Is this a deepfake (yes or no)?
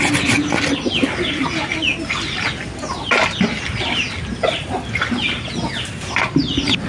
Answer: no